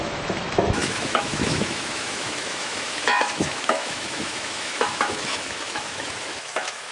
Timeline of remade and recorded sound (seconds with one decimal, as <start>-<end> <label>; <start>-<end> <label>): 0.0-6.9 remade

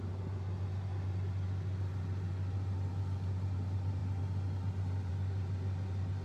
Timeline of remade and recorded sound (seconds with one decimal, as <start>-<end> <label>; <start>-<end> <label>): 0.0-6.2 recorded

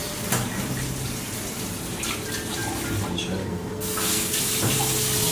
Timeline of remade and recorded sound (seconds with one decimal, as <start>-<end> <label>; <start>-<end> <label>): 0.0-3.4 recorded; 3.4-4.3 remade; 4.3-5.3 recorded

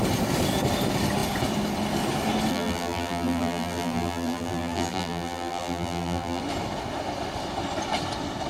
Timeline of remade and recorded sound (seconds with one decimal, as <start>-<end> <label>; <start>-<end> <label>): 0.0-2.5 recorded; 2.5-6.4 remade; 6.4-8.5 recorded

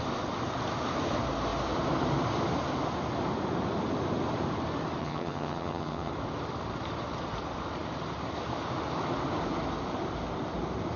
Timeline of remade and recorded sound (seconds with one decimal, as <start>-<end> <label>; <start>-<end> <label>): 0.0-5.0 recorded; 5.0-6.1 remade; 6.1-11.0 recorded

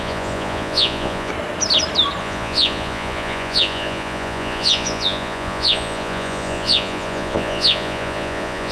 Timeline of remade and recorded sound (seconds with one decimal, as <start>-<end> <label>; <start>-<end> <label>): 0.0-1.3 remade; 1.3-2.2 recorded; 2.2-8.7 remade

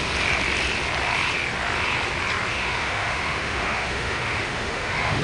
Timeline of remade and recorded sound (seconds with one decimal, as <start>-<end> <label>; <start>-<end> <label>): 0.0-2.5 recorded; 2.5-5.2 remade

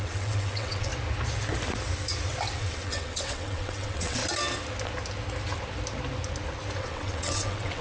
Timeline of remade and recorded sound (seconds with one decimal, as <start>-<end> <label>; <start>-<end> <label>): 0.0-0.9 remade; 0.9-2.6 recorded; 2.6-4.2 remade; 4.2-6.8 recorded; 6.8-7.8 remade